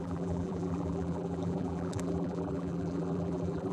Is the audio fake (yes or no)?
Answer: yes